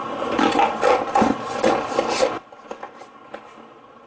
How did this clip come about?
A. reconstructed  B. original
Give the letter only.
B